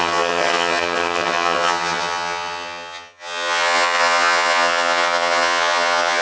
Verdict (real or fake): fake